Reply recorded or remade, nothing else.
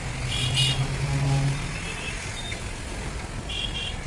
recorded